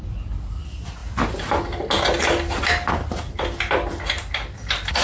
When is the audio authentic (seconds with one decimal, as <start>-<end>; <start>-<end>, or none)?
0.0-5.0